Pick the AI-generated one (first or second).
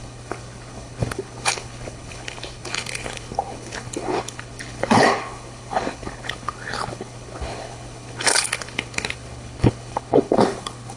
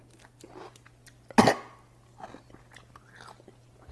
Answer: first